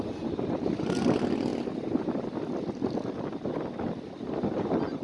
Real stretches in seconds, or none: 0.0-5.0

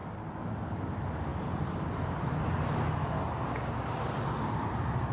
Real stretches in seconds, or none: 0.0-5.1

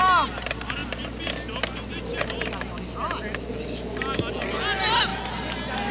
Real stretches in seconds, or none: 0.0-5.9